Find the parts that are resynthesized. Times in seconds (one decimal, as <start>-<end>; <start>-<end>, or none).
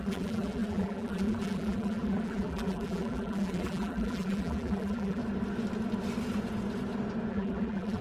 0.0-5.2; 7.3-8.0